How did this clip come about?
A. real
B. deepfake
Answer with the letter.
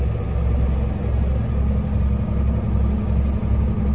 A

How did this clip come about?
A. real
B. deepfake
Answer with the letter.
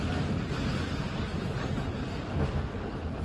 A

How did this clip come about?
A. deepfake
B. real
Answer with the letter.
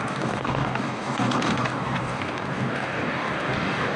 A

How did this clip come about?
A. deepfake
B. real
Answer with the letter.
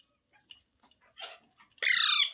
B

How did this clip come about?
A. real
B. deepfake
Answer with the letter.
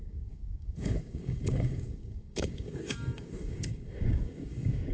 B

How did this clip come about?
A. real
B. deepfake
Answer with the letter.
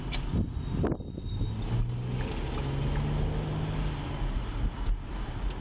A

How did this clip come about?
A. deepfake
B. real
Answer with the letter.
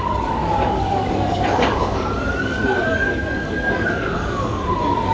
A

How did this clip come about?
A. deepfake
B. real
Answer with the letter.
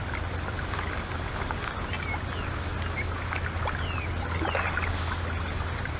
B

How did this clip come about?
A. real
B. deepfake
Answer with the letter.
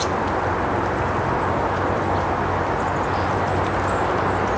A